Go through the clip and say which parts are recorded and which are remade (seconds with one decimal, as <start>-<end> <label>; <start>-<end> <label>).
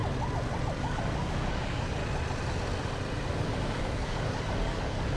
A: 0.0-0.8 recorded; 0.8-2.0 remade; 2.0-3.3 recorded; 3.3-5.2 remade